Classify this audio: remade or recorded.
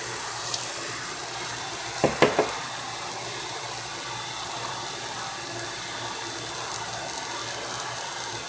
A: recorded